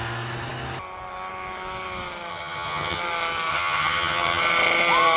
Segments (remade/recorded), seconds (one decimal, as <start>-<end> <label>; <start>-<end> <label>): 0.0-2.3 recorded; 2.3-3.0 remade; 3.0-3.5 recorded; 3.5-4.4 remade; 4.4-5.2 recorded